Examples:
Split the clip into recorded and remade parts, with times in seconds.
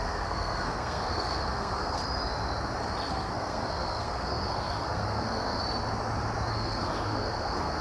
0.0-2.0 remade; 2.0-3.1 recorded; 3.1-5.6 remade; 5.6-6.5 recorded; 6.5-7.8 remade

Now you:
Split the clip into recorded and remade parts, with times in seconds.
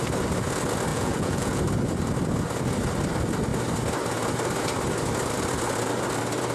0.0-0.9 recorded; 0.9-1.6 remade; 1.6-6.5 recorded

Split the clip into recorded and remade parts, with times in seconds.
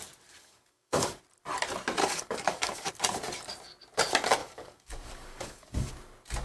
0.0-0.4 recorded; 0.4-1.2 remade; 1.2-2.0 recorded; 2.0-2.9 remade; 2.9-4.4 recorded; 4.4-5.9 remade; 5.9-6.4 recorded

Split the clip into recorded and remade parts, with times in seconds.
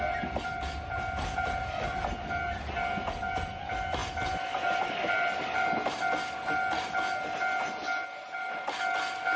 0.0-9.4 recorded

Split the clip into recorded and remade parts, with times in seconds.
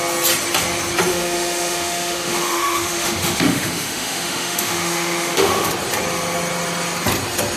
0.0-1.1 recorded; 1.1-5.7 remade; 5.7-7.6 recorded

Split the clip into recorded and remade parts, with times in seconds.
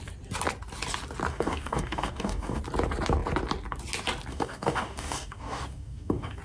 0.0-1.3 recorded; 1.3-2.6 remade; 2.6-4.3 recorded; 4.3-6.4 remade